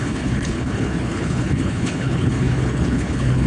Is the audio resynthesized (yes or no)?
yes